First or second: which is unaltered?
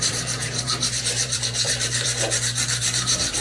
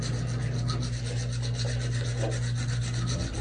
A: second